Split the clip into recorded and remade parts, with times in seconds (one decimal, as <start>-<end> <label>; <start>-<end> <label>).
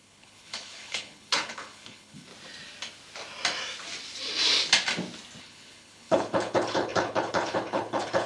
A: 0.0-2.3 remade; 2.3-5.4 recorded; 5.4-8.3 remade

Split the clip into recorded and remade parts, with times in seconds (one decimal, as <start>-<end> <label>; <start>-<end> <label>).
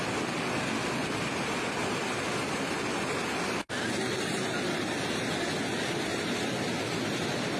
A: 0.0-7.6 recorded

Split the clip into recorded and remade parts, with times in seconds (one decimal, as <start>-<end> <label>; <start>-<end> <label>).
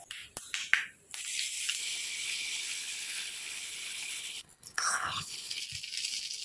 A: 0.0-1.8 recorded; 1.8-5.6 remade; 5.6-6.4 recorded